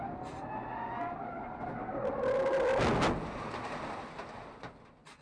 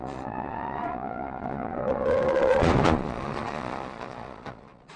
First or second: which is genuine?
first